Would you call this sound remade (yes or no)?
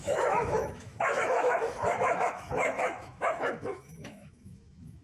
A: yes